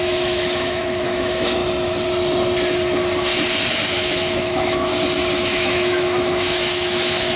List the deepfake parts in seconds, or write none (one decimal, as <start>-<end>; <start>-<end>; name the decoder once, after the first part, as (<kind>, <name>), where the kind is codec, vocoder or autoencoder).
0.0-1.6 (autoencoder, DAC-VAE); 3.9-4.9; 5.4-7.4